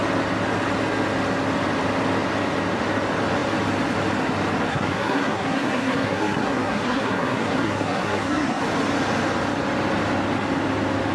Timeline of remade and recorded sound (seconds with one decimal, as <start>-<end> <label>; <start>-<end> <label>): 0.0-4.7 recorded; 4.7-8.6 remade; 8.6-11.1 recorded

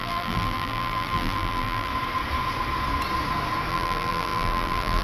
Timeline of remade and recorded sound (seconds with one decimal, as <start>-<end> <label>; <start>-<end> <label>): 0.0-1.9 remade; 1.9-3.7 recorded; 3.7-5.0 remade

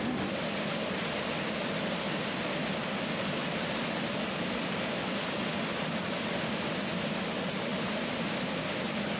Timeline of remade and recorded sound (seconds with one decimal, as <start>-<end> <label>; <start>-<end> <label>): 0.0-9.2 recorded

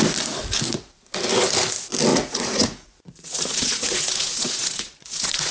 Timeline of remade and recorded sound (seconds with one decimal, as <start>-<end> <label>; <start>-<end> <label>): 0.0-2.1 recorded; 2.1-5.5 remade

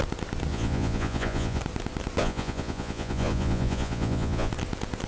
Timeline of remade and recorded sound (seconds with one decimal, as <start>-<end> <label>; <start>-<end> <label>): 0.0-0.5 recorded; 0.5-1.6 remade; 1.6-2.2 recorded; 2.2-4.5 remade; 4.5-5.1 recorded

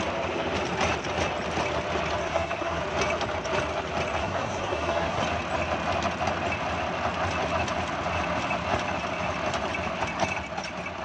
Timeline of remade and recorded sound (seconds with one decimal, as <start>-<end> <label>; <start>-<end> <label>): 0.0-2.2 recorded; 2.2-2.8 remade; 2.8-4.2 recorded; 4.2-5.2 remade; 5.2-11.0 recorded